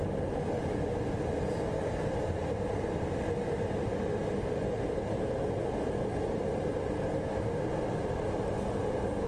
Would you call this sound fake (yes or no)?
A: no